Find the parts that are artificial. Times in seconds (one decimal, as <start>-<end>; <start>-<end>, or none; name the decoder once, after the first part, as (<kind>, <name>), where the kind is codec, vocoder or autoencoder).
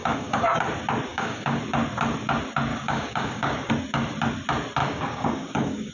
0.0-0.6 (codec, DAC); 1.1-1.6; 2.7-3.7; 4.8-5.9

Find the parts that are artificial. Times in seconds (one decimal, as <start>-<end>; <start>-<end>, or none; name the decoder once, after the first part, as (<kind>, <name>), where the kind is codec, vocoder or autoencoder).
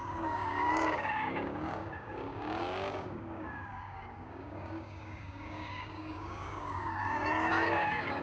0.0-8.2 (codec, DAC)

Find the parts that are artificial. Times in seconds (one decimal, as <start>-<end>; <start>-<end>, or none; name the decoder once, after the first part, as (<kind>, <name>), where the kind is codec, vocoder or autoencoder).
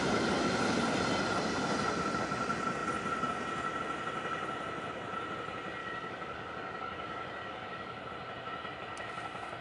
5.8-8.0 (codec, DAC)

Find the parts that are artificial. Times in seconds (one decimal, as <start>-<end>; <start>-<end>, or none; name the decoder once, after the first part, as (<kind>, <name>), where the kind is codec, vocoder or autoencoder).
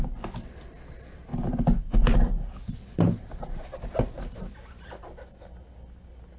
none